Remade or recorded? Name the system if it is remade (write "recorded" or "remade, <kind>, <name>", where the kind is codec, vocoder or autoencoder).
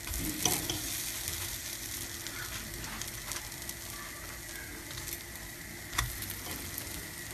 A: recorded